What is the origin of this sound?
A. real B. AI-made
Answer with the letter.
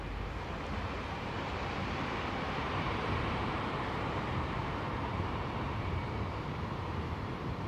B